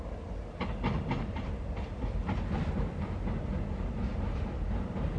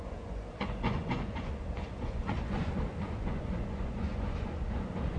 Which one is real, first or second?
first